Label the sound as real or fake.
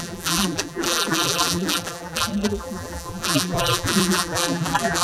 fake